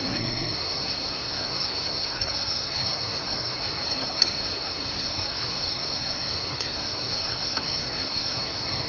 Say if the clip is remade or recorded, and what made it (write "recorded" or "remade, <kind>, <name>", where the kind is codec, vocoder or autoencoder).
remade, codec, SNAC